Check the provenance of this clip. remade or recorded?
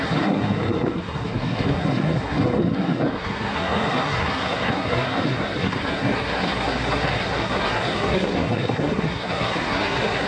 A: remade